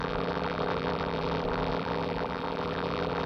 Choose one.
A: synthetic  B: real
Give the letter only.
A